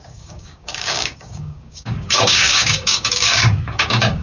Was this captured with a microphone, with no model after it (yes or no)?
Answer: no